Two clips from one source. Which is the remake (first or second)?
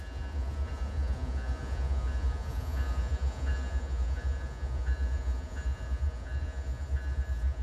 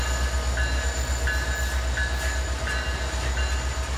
first